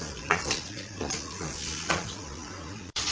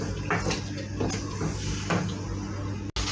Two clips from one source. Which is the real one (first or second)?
second